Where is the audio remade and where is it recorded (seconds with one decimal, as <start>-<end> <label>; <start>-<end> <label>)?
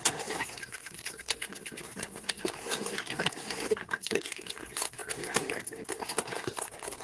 0.0-7.0 remade